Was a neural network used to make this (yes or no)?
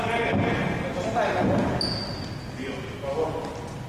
no